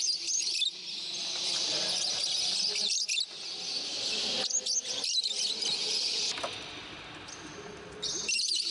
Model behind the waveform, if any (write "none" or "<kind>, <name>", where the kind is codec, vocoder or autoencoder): none